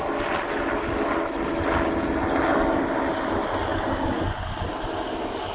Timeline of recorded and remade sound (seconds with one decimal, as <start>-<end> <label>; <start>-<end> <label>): 0.0-3.7 recorded; 3.7-4.2 remade; 4.2-5.5 recorded